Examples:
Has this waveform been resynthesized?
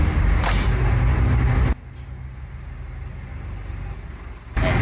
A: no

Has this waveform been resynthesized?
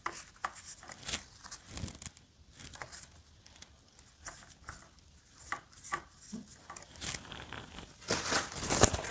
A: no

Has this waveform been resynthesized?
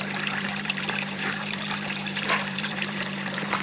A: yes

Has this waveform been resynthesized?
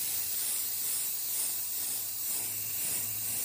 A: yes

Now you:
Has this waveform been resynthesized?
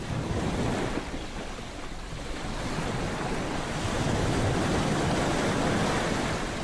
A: no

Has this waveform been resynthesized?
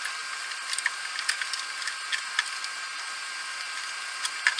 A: no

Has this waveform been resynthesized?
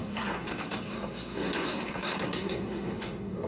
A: yes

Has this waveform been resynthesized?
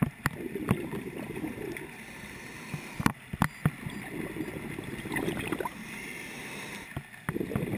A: no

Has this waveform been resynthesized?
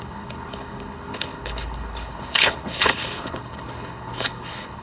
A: yes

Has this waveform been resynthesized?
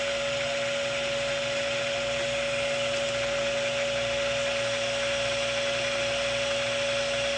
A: no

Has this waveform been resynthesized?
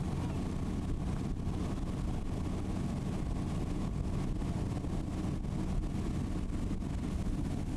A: no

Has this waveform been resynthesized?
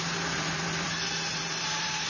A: yes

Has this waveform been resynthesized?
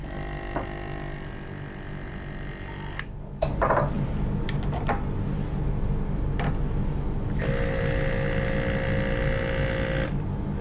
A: no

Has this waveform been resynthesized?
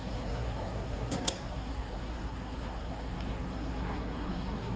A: yes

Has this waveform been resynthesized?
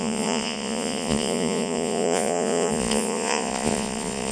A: yes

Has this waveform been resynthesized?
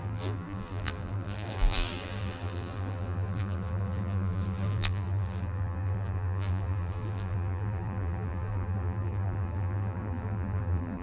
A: yes